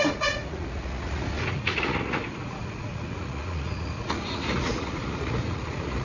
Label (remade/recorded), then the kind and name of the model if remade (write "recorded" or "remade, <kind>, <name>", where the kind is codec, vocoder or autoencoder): remade, vocoder, Vocos